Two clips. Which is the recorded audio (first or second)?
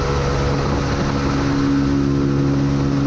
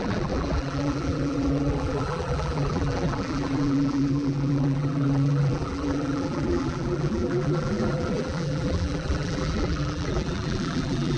first